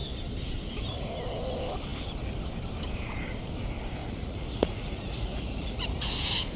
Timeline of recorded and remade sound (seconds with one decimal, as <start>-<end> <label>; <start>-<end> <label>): 0.0-4.0 recorded; 4.0-6.1 remade; 6.1-6.6 recorded